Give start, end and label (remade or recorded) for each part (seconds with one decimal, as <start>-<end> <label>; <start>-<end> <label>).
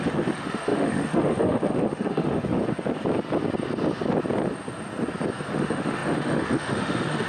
0.0-2.6 remade; 2.6-5.5 recorded; 5.5-7.3 remade